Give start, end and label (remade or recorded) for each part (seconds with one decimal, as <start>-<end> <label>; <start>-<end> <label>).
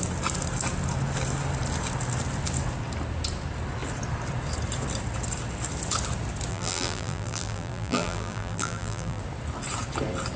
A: 0.0-6.5 recorded; 6.5-9.2 remade; 9.2-10.4 recorded